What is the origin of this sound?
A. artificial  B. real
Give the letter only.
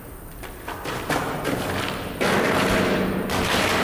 B